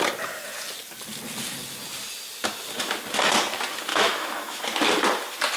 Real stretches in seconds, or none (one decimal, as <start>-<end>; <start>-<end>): 0.0-3.9; 4.6-5.6